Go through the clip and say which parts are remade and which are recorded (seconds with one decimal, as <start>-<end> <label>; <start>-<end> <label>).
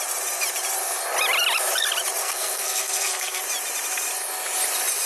0.0-2.2 recorded; 2.2-3.4 remade; 3.4-5.1 recorded